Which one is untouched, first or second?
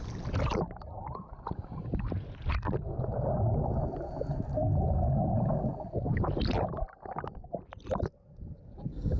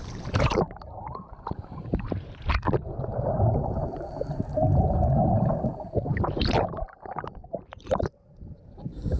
first